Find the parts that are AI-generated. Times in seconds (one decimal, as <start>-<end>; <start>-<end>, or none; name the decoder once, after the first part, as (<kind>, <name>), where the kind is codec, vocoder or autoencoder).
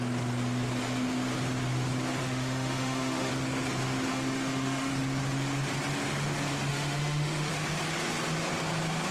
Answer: 2.2-3.3 (autoencoder, DAC-VAE); 4.1-4.9; 6.7-7.5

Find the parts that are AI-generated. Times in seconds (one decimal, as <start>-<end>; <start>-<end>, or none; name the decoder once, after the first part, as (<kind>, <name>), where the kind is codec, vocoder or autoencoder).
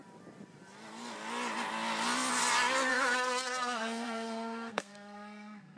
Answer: 2.9-5.8 (codec, SNAC)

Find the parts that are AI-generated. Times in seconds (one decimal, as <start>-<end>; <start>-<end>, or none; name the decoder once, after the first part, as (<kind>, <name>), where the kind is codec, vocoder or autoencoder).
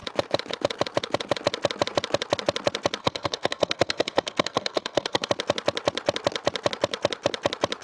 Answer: 3.0-5.3 (codec, SNAC)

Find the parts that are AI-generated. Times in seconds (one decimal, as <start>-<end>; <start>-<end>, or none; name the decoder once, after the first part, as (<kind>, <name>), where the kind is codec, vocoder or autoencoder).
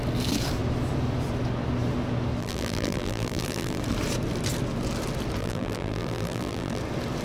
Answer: 2.4-3.8 (vocoder, BigVGAN v2); 5.4-6.8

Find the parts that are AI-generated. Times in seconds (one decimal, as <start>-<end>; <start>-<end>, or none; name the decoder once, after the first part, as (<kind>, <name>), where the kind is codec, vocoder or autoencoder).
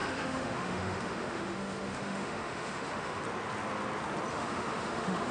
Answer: 0.0-3.2 (autoencoder, DAC-VAE); 4.3-5.3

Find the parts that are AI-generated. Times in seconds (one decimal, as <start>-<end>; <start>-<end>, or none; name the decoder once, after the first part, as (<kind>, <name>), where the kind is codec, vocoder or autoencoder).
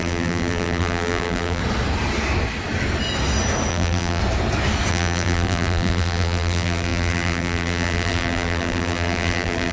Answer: 0.0-1.6 (vocoder, BigVGAN v2); 3.7-4.2; 4.9-9.7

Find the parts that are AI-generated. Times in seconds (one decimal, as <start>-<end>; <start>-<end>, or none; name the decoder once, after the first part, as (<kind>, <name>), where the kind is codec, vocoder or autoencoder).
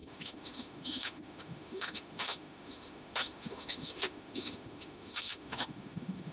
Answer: 0.0-6.3 (autoencoder, DAC-VAE)